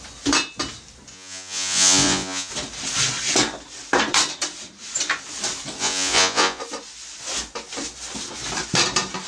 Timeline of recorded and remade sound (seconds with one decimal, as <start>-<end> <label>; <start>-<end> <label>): 0.0-1.1 recorded; 1.1-2.5 remade; 2.5-5.8 recorded; 5.8-6.6 remade; 6.6-9.3 recorded